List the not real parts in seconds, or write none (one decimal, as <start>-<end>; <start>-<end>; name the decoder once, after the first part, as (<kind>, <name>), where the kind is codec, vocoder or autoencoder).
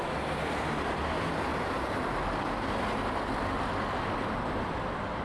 1.5-2.2 (vocoder, BigVGAN v2)